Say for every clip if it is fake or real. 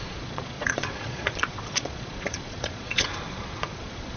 fake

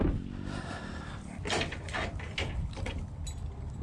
real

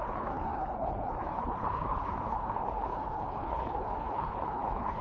fake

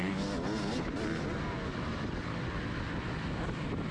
real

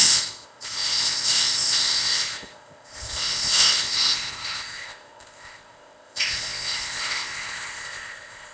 fake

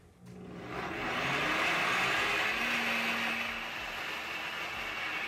real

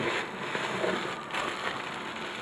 real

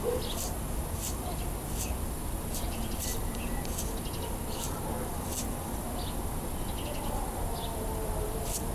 real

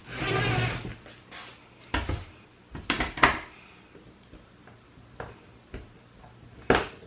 real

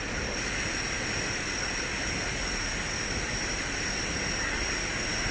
real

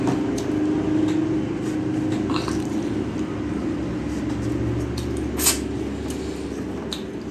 real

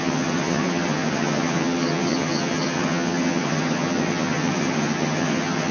fake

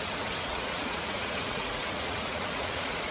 fake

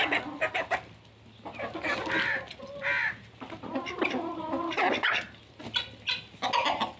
real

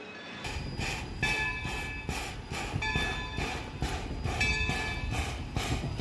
real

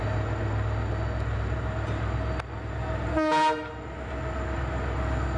real